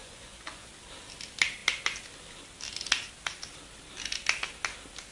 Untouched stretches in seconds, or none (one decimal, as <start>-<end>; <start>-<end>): 0.7-5.1